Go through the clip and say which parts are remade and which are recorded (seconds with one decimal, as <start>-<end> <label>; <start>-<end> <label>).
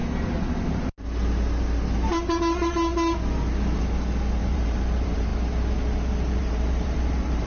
0.0-2.4 recorded; 2.4-2.9 remade; 2.9-4.4 recorded; 4.4-5.3 remade; 5.3-6.4 recorded; 6.4-7.5 remade